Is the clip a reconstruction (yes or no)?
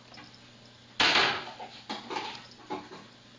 no